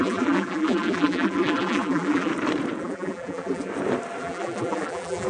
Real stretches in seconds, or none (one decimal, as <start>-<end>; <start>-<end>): 2.3-2.8; 3.7-4.2